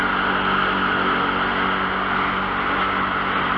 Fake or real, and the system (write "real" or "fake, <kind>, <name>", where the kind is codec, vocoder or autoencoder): real